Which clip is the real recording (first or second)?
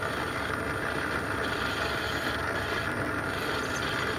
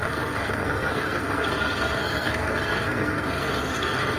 first